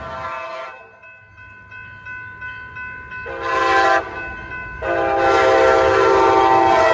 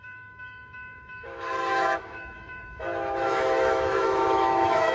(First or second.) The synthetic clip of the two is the second